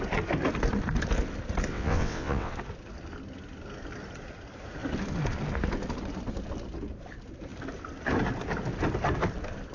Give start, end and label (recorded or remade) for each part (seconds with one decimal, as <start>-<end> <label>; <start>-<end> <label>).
0.0-1.7 recorded; 1.7-2.5 remade; 2.5-9.7 recorded